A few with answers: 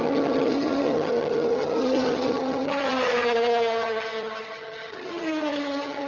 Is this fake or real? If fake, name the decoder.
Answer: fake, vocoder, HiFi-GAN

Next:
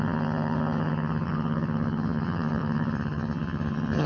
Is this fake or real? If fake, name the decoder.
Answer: fake, vocoder, HiFi-GAN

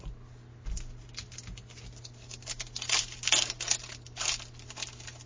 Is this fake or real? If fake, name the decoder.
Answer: real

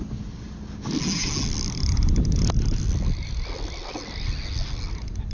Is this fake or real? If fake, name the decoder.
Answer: real